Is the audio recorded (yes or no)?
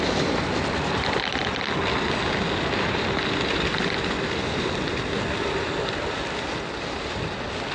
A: yes